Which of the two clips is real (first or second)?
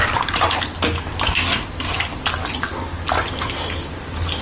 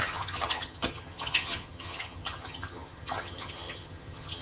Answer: first